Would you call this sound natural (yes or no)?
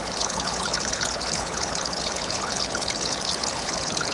no